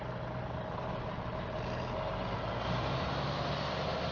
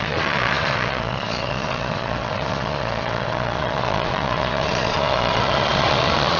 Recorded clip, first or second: first